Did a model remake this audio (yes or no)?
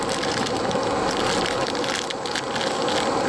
no